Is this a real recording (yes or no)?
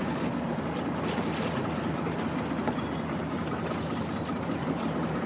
yes